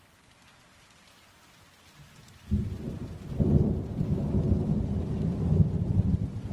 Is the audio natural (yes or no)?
yes